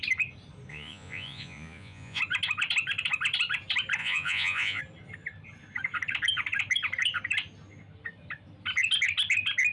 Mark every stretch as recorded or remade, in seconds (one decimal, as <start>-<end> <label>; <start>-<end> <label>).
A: 0.0-0.7 recorded; 0.7-2.2 remade; 2.2-4.0 recorded; 4.0-4.8 remade; 4.8-9.7 recorded